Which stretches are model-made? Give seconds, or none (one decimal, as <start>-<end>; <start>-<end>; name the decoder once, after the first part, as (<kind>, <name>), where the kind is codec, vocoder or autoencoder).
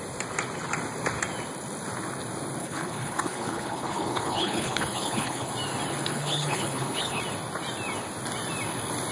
2.6-5.5 (codec, HILCodec); 6.1-7.2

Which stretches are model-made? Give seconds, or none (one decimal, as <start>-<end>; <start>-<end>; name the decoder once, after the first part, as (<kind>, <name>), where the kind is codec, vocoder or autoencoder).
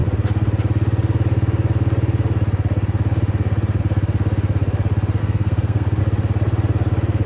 5.2-6.0 (codec, SNAC)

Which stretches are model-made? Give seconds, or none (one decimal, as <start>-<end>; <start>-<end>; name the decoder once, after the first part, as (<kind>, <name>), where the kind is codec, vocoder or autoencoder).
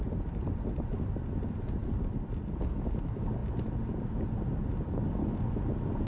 none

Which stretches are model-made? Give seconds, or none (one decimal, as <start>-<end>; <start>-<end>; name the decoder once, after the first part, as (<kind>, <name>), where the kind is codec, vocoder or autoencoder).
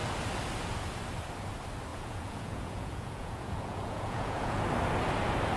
1.9-4.6 (vocoder, Vocos)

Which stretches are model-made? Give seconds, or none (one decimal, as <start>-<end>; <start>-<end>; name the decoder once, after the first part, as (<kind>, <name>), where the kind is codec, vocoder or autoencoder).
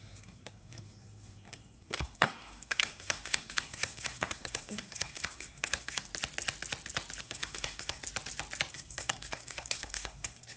0.0-6.1 (codec, SNAC); 7.2-8.0; 8.7-10.6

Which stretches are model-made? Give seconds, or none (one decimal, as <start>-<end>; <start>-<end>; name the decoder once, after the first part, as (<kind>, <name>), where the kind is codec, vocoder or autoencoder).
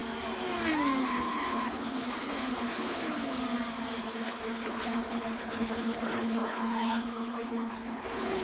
1.0-3.4 (codec, HILCodec); 4.0-8.4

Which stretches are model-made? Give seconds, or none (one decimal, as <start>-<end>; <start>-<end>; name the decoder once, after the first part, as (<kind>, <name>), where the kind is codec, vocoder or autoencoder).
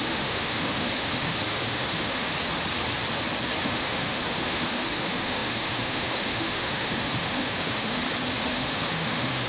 0.0-2.3 (autoencoder, DAC-VAE); 3.6-8.0; 8.5-9.5